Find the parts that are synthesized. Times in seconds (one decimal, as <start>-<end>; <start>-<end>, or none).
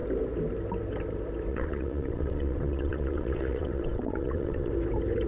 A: 1.5-4.7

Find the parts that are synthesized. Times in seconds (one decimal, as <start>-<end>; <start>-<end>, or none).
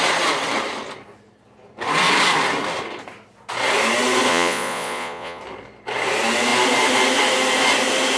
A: 4.3-5.4